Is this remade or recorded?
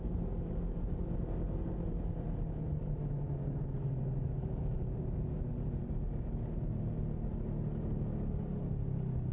recorded